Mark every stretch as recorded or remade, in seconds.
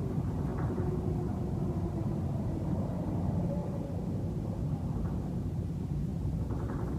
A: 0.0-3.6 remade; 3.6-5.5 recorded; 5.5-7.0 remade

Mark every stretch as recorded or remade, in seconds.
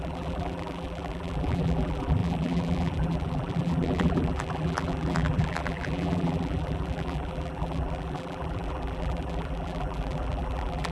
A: 0.0-10.9 remade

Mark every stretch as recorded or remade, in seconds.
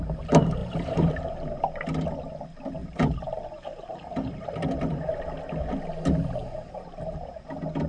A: 0.0-0.6 recorded; 0.6-1.1 remade; 1.1-2.8 recorded; 2.8-4.3 remade; 4.3-6.4 recorded; 6.4-7.2 remade; 7.2-7.9 recorded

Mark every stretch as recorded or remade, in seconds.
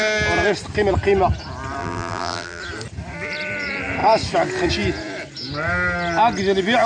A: 0.0-1.8 recorded; 1.8-2.6 remade; 2.6-6.9 recorded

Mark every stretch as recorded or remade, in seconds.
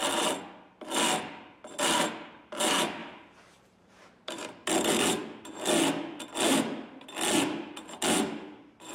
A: 0.0-3.0 recorded; 3.0-4.7 remade; 4.7-8.9 recorded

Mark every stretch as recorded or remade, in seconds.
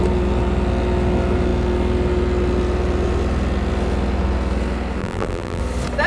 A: 0.0-5.0 recorded; 5.0-5.6 remade; 5.6-6.1 recorded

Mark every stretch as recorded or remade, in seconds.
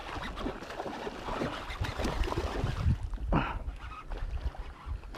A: 0.0-5.2 recorded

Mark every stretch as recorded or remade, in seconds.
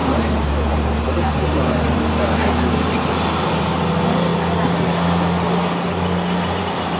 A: 0.0-2.1 remade; 2.1-7.0 recorded